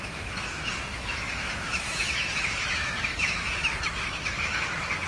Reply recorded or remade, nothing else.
remade